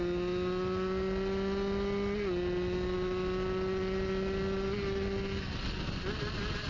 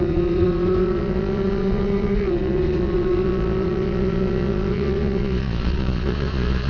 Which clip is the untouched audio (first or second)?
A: first